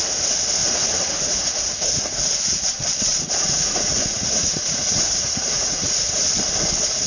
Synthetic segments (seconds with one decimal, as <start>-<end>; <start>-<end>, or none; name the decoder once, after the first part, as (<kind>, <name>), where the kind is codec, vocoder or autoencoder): 0.6-2.7 (vocoder, Vocos); 3.1-6.2